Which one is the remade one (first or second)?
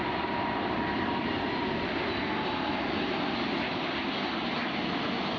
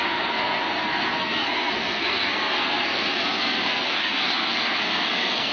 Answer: second